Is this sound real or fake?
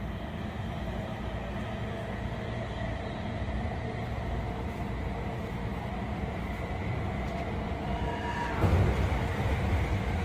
real